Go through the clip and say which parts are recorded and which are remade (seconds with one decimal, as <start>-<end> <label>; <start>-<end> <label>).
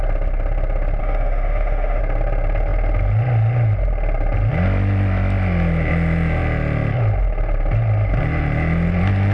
0.0-1.0 recorded; 1.0-2.0 remade; 2.0-9.3 recorded